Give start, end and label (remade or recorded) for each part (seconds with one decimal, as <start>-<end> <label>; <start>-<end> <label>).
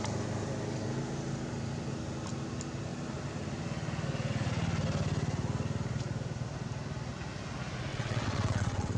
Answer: 0.0-7.9 recorded; 7.9-9.0 remade